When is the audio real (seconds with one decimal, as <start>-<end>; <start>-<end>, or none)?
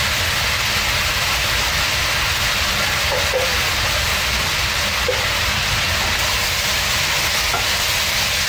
0.0-8.5